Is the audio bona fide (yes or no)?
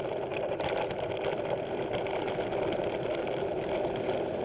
yes